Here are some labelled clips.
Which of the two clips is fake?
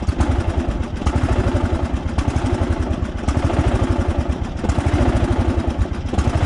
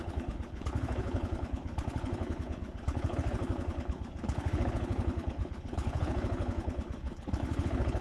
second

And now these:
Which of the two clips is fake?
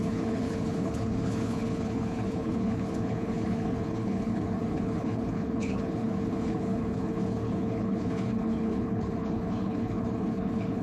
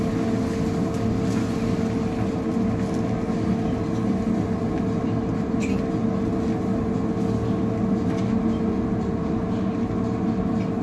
first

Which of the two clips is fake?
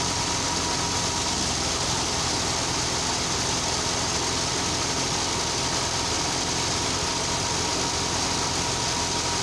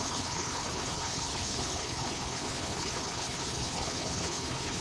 second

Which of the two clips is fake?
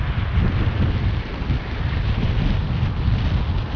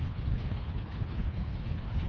second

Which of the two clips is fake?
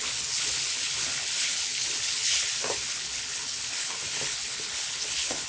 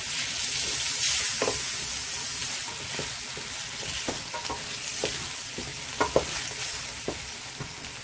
first